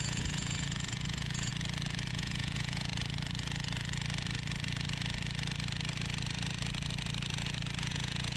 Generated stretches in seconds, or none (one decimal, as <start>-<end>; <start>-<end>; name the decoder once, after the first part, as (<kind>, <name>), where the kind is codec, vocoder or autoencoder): 0.0-1.5 (vocoder, Vocos); 2.1-2.9; 7.9-8.4